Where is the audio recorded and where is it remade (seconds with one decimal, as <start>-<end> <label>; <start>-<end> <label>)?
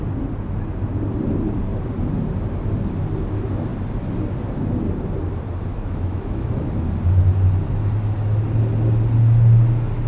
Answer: 0.0-5.7 recorded; 5.7-6.7 remade; 6.7-10.1 recorded